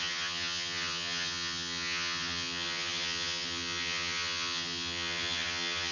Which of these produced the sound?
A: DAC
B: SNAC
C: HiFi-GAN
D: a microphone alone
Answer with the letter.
C